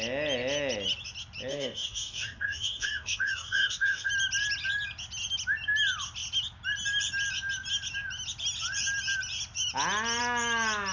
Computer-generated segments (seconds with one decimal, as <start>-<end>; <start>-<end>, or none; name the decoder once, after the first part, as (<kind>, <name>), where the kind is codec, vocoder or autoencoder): 1.5-4.1 (codec, DAC)